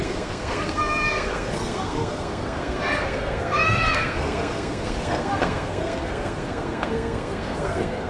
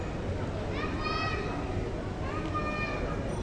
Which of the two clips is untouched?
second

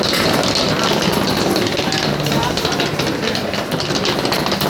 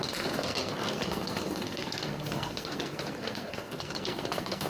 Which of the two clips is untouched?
first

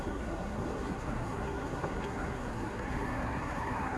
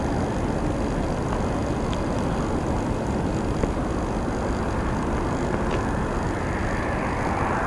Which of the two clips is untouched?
second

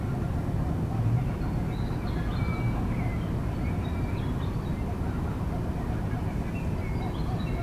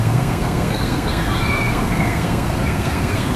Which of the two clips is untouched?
first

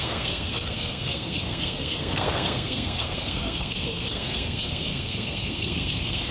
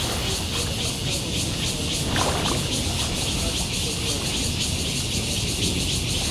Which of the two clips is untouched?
second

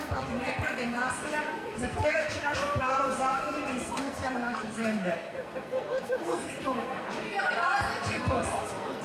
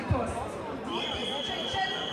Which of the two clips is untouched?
second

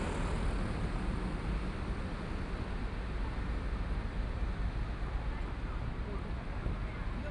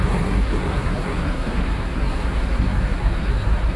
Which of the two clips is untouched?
first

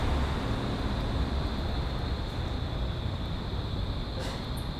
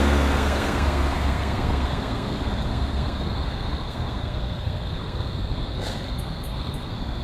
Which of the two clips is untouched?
first